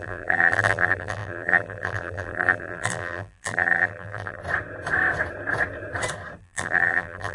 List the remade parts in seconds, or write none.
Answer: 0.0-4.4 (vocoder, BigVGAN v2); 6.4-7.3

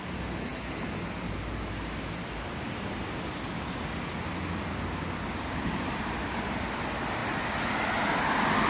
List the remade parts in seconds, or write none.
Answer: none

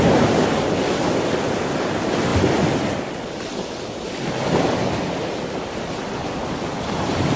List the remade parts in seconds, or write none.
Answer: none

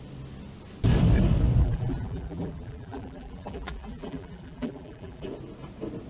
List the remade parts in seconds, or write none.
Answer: 1.6-5.3 (vocoder, BigVGAN v2)

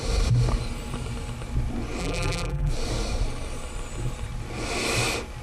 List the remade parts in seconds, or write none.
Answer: 2.0-2.7 (vocoder, BigVGAN v2)

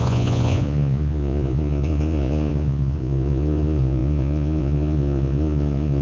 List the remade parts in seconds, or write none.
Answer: 0.0-6.0 (vocoder, Vocos)

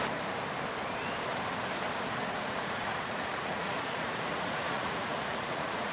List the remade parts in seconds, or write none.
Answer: 2.2-5.9 (vocoder, Vocos)

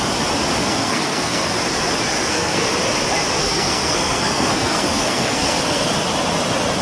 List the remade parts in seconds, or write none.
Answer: 0.6-1.5 (codec, SNAC); 2.1-2.7; 3.4-5.9